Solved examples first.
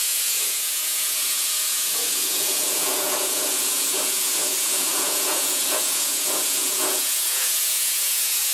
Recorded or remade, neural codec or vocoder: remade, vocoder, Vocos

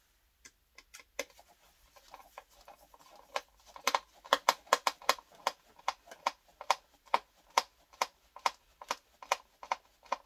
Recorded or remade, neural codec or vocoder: recorded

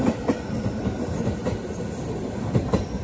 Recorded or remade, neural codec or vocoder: recorded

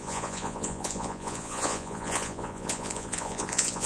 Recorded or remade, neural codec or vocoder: remade, vocoder, Vocos